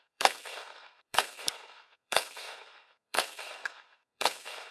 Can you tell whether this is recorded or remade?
remade